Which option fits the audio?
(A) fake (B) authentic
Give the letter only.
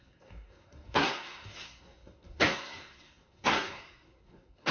A